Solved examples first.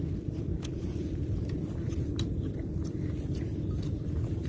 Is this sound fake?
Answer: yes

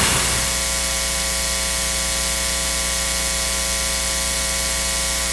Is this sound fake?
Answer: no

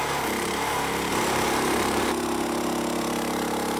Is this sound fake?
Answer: yes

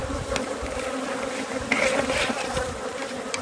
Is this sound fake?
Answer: no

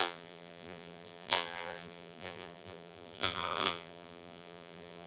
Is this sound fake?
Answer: yes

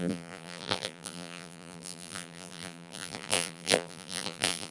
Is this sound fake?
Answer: yes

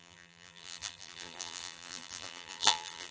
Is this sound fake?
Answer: yes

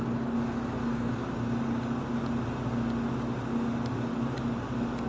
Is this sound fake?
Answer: no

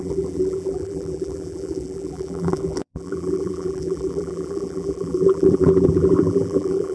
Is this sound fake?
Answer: yes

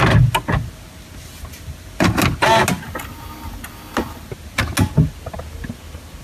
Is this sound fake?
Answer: no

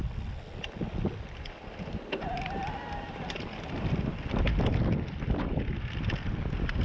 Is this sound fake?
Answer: no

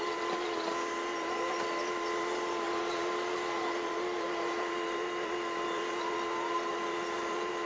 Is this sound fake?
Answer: yes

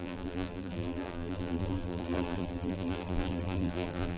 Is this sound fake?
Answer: yes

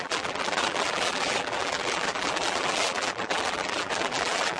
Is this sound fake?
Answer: yes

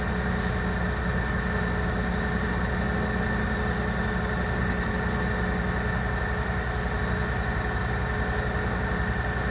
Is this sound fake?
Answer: no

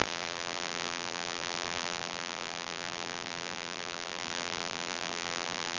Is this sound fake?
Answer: yes